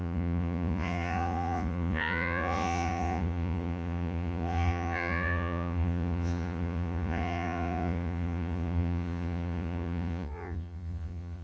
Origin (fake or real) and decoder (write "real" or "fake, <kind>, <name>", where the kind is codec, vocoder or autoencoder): fake, vocoder, Vocos